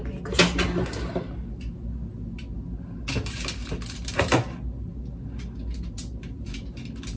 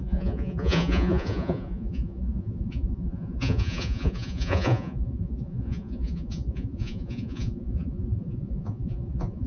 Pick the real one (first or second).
first